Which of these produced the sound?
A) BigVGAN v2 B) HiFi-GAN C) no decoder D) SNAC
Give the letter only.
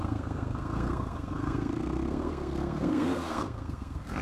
D